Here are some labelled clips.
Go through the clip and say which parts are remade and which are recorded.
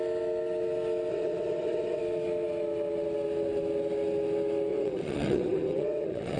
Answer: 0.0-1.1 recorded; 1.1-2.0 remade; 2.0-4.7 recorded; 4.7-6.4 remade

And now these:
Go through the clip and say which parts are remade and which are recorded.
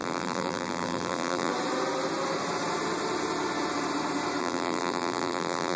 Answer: 0.0-1.5 remade; 1.5-4.4 recorded; 4.4-5.8 remade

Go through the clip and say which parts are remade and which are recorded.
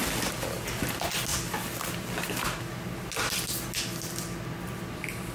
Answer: 0.0-5.3 recorded